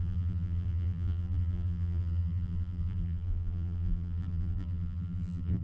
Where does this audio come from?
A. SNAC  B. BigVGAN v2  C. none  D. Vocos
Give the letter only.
B